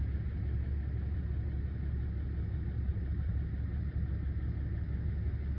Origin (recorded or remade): recorded